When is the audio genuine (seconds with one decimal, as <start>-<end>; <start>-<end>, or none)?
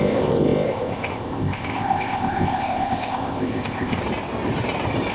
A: 4.0-5.1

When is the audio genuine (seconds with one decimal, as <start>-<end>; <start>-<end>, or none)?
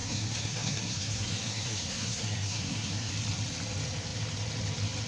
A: 3.1-5.1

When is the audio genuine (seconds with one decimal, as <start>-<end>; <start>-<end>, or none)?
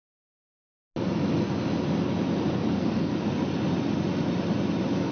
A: 0.0-2.7; 3.1-5.1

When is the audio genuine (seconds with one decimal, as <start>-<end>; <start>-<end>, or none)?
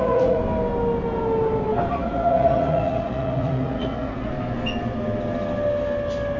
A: 0.4-1.9; 4.3-6.4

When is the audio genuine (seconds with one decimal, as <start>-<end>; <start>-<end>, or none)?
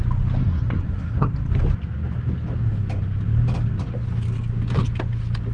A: 0.0-0.4; 1.3-5.5